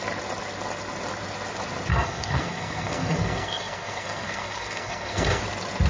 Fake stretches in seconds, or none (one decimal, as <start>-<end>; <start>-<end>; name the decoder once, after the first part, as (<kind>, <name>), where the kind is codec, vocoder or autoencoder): 1.9-5.4 (codec, SNAC)